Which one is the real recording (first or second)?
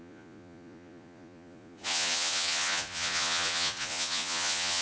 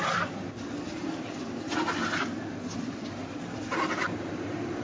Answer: second